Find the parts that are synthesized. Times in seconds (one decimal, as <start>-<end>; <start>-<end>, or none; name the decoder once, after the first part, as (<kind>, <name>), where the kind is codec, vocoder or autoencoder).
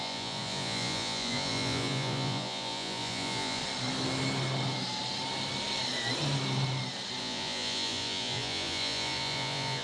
0.0-3.6 (vocoder, Vocos); 7.2-9.8